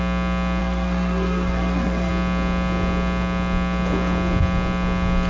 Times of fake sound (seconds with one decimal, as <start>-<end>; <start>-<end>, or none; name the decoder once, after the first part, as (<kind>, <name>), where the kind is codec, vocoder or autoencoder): 0.6-2.1 (codec, SNAC)